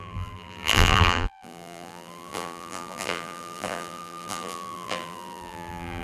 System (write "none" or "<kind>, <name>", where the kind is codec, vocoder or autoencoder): vocoder, BigVGAN v2